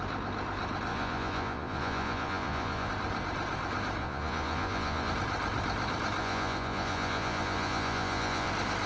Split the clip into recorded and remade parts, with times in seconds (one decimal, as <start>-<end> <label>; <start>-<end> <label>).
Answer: 0.0-0.9 recorded; 0.9-2.9 remade; 2.9-4.0 recorded; 4.0-5.1 remade; 5.1-6.2 recorded; 6.2-8.5 remade; 8.5-8.9 recorded